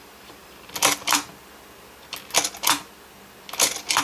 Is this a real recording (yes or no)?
yes